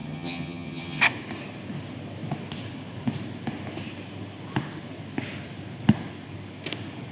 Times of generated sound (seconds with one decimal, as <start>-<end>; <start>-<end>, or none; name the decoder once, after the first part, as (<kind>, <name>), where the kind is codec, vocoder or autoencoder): 0.0-1.0 (vocoder, HiFi-GAN)